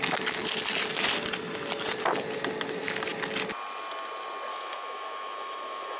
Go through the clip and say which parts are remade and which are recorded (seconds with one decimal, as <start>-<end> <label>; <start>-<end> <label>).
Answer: 0.0-4.5 recorded; 4.5-6.0 remade